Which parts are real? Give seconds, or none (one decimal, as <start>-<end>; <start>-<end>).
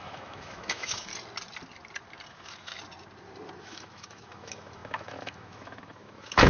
1.1-2.3; 2.7-3.6